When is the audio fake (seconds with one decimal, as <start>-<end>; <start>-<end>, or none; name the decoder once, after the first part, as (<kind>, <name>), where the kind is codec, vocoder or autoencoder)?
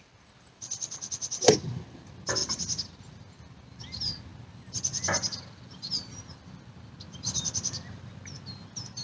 none